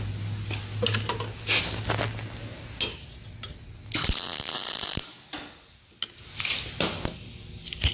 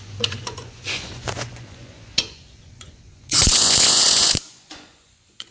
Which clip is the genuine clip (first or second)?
first